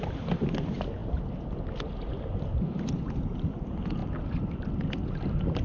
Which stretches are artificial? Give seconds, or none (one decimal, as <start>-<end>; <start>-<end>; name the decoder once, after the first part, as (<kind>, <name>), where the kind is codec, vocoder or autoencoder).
none